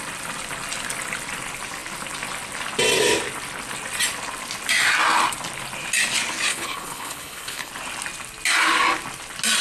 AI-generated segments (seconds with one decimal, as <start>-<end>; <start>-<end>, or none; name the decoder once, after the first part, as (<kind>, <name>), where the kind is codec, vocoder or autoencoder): 6.5-7.7 (codec, HILCodec)